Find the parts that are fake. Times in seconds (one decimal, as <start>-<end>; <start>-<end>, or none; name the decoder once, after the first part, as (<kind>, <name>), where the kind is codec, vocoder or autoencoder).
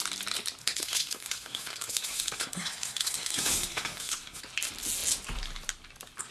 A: 0.6-4.4 (codec, SNAC)